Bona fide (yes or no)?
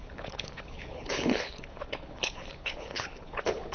no